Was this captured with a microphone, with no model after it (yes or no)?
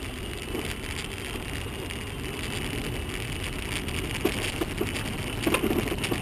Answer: yes